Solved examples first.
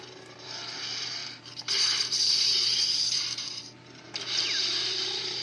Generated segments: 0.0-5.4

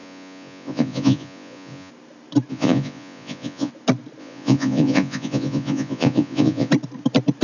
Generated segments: 0.0-1.9; 2.5-3.7; 4.2-6.7

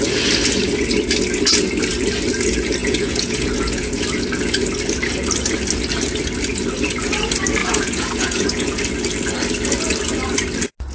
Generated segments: 2.8-4.0; 7.6-8.8

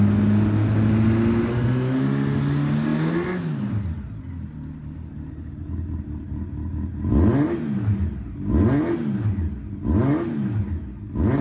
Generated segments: none

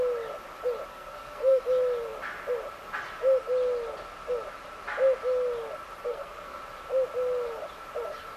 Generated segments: 0.9-1.6; 6.0-6.6

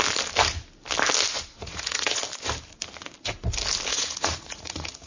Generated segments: 1.5-2.2; 3.9-5.1

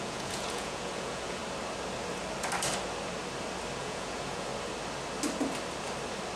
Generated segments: 0.0-1.4; 3.8-4.5